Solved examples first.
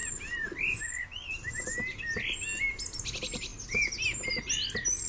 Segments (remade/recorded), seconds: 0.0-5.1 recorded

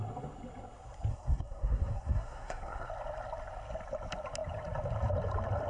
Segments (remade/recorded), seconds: 0.0-1.1 recorded; 1.1-2.9 remade; 2.9-5.7 recorded

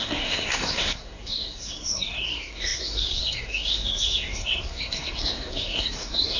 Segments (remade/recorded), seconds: 0.0-6.4 remade

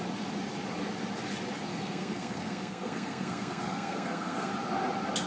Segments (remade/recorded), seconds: 0.0-1.7 recorded; 1.7-4.5 remade; 4.5-5.3 recorded

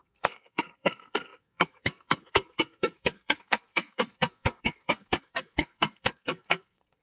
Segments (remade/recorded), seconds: 0.0-7.0 remade

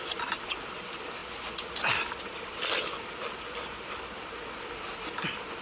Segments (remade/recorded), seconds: 0.0-5.6 recorded

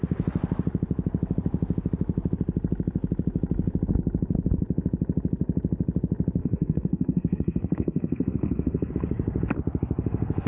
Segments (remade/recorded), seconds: 0.0-6.4 recorded; 6.4-8.9 remade; 8.9-10.5 recorded

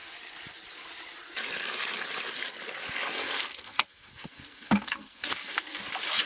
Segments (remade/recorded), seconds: 0.0-3.2 recorded; 3.2-5.8 remade; 5.8-6.3 recorded